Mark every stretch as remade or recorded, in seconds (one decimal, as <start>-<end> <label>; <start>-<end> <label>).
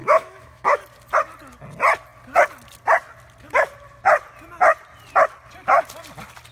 0.0-0.8 remade; 0.8-6.5 recorded